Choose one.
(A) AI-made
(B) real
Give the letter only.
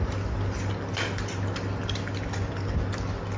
B